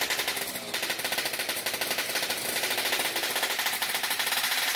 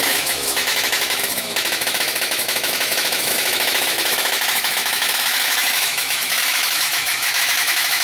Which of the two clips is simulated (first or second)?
second